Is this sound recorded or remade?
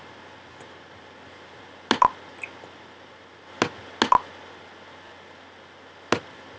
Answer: recorded